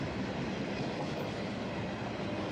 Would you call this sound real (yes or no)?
yes